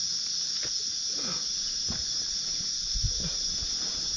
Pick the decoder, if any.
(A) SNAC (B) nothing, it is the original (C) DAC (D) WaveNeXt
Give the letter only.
B